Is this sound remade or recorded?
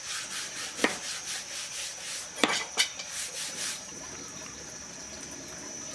remade